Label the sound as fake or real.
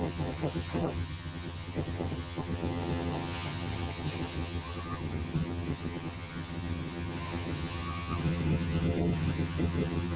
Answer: fake